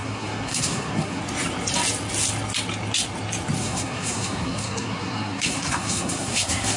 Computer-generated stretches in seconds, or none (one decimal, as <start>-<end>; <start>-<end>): 0.0-1.2; 3.6-6.8